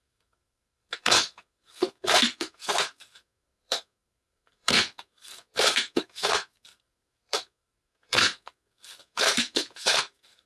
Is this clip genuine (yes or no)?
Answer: no